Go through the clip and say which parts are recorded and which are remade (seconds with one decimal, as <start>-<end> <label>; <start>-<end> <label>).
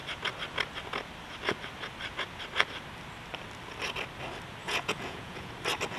0.0-4.6 recorded; 4.6-5.5 remade; 5.5-6.0 recorded